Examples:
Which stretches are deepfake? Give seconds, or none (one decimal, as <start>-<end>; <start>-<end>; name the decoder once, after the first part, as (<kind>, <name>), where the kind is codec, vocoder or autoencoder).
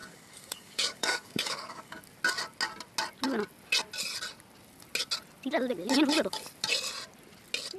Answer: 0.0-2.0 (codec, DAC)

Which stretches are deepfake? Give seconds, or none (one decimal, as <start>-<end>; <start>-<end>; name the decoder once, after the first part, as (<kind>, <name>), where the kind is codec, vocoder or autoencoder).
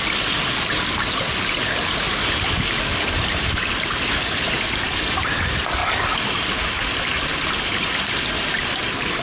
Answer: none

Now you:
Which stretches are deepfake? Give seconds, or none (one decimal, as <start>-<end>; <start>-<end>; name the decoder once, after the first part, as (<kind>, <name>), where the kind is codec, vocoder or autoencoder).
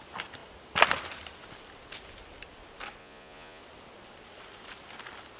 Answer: 3.0-3.6 (vocoder, Vocos)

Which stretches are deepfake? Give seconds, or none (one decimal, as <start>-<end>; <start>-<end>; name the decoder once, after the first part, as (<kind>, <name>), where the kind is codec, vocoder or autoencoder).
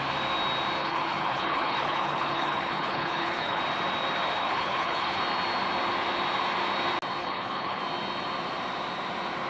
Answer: 0.8-3.6 (codec, HILCodec); 4.4-5.2; 7.2-7.8